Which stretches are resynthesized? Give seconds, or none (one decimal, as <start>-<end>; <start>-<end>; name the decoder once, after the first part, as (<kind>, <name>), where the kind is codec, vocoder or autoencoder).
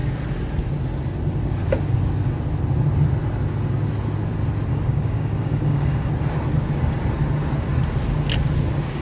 4.7-6.1 (codec, DAC)